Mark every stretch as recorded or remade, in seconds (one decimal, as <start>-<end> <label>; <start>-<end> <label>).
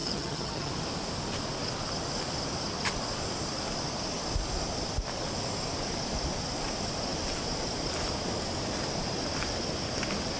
0.0-0.7 remade; 0.7-10.4 recorded